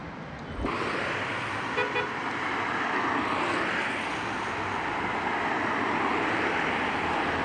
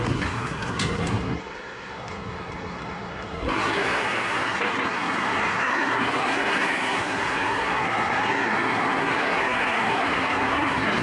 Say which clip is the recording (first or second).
first